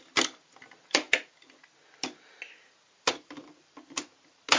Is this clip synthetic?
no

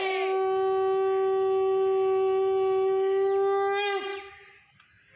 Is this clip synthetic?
no